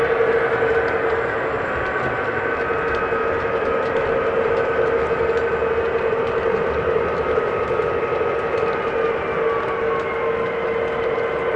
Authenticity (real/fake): real